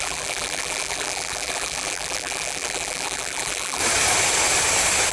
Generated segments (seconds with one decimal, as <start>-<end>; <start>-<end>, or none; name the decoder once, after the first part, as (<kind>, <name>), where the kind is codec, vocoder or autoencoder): 0.0-3.8 (vocoder, BigVGAN v2)